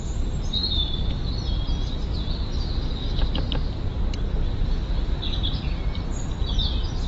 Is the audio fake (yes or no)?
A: no